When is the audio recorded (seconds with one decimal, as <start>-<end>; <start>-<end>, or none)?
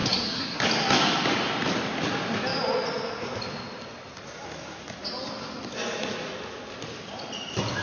0.6-7.8